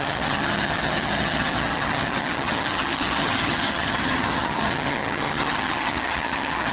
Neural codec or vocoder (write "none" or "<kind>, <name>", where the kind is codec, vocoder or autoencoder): vocoder, HiFi-GAN